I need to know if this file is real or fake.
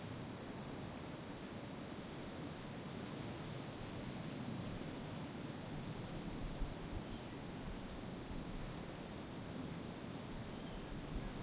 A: real